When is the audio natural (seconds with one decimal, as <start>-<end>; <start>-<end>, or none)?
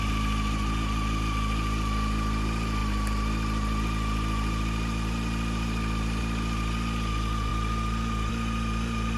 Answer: 0.0-9.2